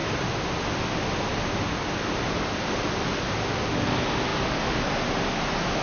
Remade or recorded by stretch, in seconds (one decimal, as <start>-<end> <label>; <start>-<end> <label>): 0.0-5.8 recorded